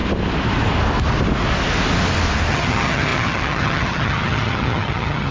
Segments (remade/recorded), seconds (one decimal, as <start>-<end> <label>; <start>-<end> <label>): 0.0-2.5 recorded; 2.5-5.3 remade